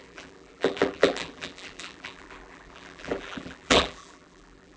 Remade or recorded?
remade